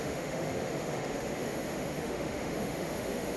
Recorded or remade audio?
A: remade